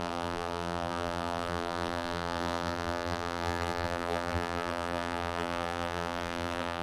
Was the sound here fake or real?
fake